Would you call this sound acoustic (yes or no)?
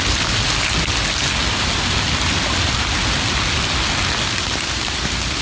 yes